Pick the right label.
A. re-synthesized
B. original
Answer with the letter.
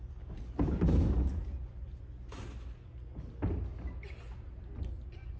B